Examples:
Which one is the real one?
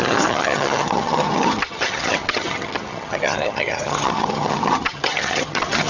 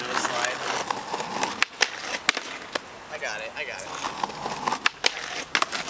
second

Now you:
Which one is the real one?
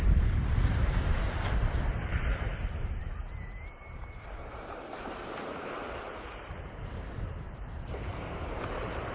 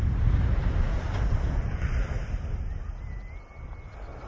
second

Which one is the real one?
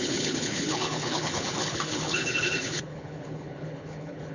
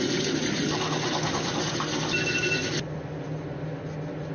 second